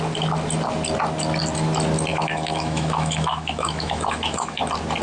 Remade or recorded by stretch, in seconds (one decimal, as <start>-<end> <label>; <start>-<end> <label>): 0.0-2.1 recorded; 2.1-4.6 remade; 4.6-5.0 recorded